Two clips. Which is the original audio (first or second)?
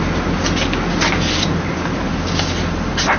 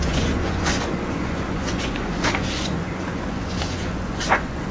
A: first